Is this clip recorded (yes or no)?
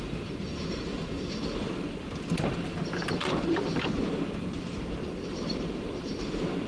no